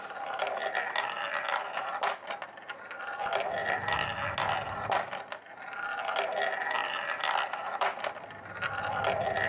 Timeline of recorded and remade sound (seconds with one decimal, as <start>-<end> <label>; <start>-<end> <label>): 0.0-6.8 recorded; 6.8-8.9 remade; 8.9-9.5 recorded